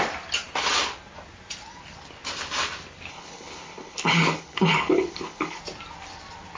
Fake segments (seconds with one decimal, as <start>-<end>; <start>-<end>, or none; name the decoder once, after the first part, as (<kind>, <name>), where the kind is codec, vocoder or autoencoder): 3.1-5.6 (codec, HILCodec)